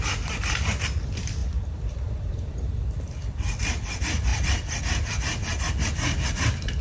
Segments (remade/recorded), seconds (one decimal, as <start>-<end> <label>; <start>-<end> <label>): 0.0-1.4 recorded; 1.4-2.8 remade; 2.8-6.8 recorded